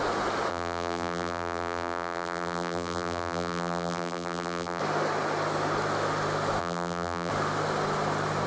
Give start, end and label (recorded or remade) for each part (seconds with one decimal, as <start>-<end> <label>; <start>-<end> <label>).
0.0-0.5 recorded; 0.5-4.8 remade; 4.8-6.6 recorded; 6.6-7.3 remade; 7.3-8.5 recorded